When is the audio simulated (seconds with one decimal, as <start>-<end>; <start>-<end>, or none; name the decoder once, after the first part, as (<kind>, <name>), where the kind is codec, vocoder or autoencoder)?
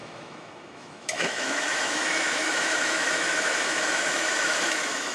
0.0-5.1 (autoencoder, DAC-VAE)